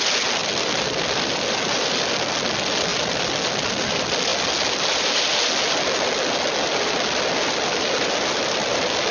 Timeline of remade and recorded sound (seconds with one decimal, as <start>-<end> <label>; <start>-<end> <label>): 0.0-0.4 recorded; 0.4-1.9 remade; 1.9-9.1 recorded